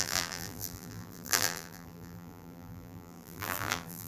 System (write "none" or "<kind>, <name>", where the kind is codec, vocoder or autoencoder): vocoder, BigVGAN v2